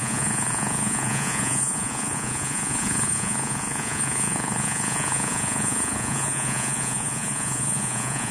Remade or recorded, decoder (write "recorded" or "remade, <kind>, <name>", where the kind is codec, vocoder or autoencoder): remade, vocoder, Vocos